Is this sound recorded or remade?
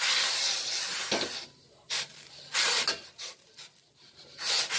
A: recorded